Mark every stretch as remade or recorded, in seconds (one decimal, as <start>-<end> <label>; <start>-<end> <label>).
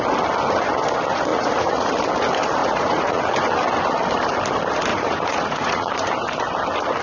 0.0-1.3 recorded; 1.3-1.9 remade; 1.9-2.6 recorded; 2.6-3.2 remade; 3.2-4.9 recorded; 4.9-6.1 remade; 6.1-7.0 recorded